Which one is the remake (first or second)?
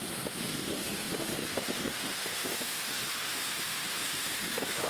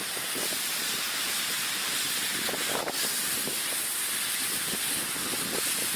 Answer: first